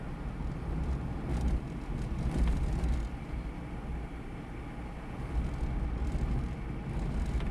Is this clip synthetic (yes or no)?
no